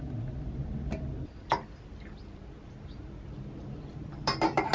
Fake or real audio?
real